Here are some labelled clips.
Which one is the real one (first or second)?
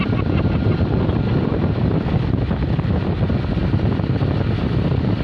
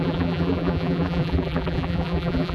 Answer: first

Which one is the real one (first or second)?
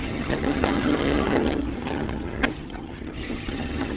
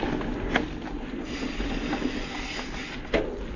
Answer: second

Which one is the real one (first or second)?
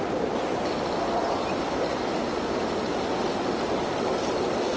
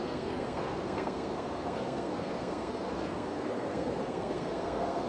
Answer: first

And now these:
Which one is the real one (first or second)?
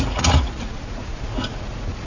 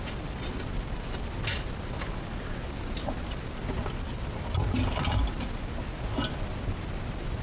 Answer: second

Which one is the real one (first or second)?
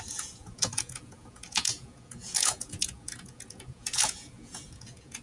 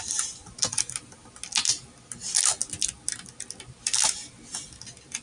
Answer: second